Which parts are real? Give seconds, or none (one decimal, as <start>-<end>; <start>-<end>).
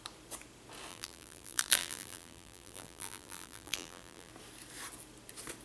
0.0-0.9; 4.3-5.6